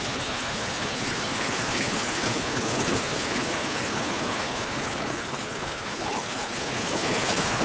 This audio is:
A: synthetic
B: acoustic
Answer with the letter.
A